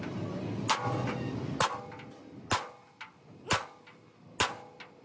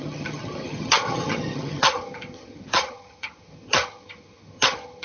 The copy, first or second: second